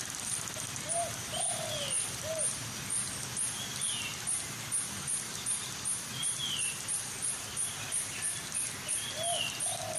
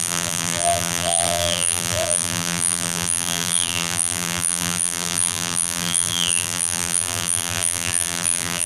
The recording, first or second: first